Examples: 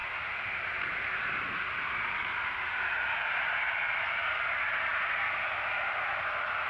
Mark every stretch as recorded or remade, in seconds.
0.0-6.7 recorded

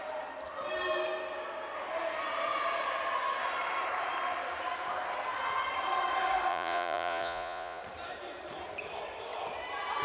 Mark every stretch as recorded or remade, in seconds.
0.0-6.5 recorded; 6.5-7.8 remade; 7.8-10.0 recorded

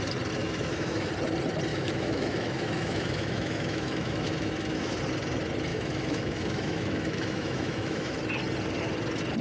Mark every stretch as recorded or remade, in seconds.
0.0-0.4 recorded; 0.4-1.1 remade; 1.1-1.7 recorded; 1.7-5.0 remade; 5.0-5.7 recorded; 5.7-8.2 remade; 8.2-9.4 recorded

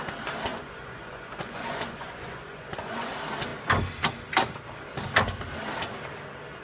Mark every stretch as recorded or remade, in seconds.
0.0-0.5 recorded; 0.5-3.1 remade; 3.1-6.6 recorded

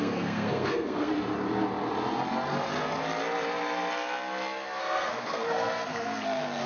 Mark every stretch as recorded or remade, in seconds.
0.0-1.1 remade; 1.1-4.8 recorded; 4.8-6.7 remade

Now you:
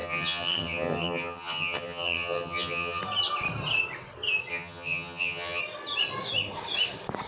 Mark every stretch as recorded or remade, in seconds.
0.0-3.0 remade; 3.0-4.5 recorded; 4.5-5.6 remade; 5.6-7.3 recorded